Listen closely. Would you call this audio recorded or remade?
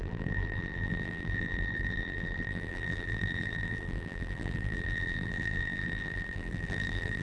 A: remade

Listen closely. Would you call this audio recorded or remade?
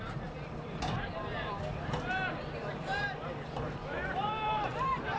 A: remade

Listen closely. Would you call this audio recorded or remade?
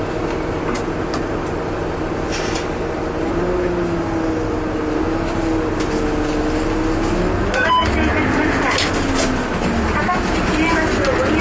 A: recorded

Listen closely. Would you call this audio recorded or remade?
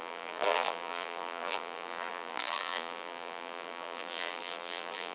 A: remade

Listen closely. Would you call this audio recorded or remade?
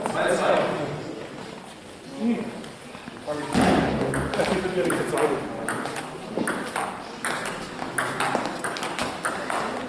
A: recorded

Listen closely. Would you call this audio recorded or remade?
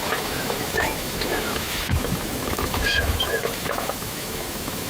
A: remade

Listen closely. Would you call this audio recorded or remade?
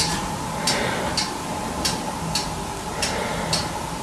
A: recorded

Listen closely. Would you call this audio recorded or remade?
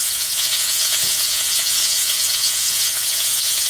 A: remade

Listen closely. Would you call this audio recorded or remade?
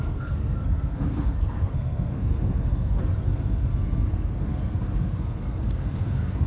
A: remade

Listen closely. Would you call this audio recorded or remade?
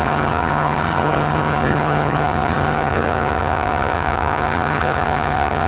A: remade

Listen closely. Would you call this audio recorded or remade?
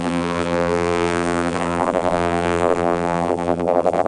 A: remade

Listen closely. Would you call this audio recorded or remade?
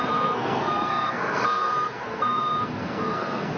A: remade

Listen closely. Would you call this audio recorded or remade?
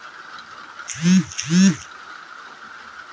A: recorded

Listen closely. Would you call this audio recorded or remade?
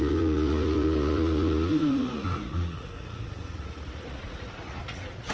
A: remade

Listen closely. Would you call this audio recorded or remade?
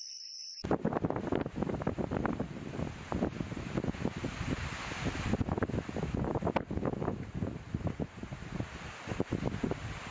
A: recorded